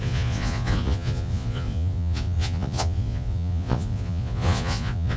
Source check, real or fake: fake